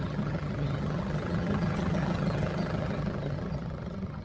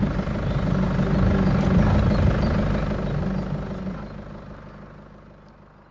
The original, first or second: second